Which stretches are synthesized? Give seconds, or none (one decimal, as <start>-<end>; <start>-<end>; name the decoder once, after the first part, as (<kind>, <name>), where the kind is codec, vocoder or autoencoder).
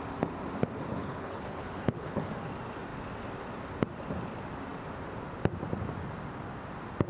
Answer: 0.9-2.3 (codec, HILCodec)